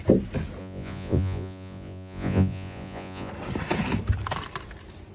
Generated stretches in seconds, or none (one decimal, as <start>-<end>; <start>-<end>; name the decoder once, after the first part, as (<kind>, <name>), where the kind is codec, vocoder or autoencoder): 0.6-3.3 (vocoder, Vocos)